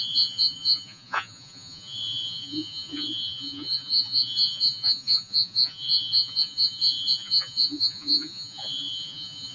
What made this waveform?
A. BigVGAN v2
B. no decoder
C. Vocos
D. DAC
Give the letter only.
C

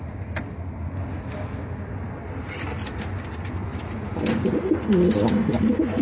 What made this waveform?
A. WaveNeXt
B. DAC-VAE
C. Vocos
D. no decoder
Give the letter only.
D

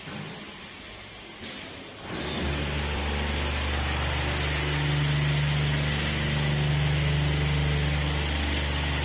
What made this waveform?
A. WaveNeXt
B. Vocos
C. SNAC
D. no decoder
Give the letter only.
D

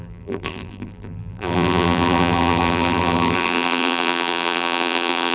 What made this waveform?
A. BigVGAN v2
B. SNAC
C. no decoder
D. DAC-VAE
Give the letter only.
A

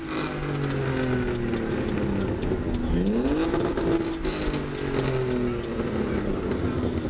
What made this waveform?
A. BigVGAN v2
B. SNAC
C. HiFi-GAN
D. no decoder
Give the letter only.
D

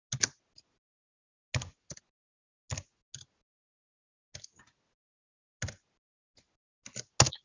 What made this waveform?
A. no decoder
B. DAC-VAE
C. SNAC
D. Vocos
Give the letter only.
A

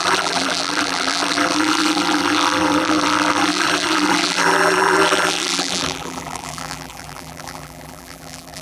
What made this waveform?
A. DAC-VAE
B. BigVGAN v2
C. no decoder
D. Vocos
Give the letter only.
B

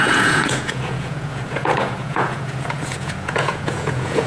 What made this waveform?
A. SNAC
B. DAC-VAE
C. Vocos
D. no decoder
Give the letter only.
C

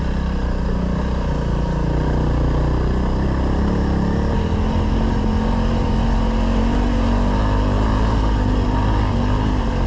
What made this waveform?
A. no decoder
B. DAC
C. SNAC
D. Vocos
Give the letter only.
A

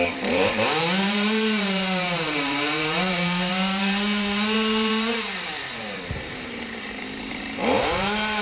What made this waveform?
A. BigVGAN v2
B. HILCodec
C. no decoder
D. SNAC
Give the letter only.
A